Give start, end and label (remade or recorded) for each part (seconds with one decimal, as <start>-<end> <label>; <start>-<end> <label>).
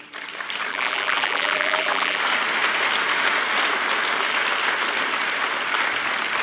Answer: 0.0-0.7 recorded; 0.7-2.2 remade; 2.2-6.4 recorded